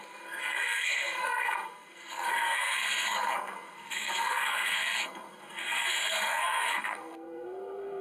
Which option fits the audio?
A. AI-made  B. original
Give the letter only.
A